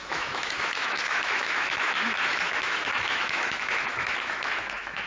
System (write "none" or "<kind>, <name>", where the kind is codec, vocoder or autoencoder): autoencoder, DAC-VAE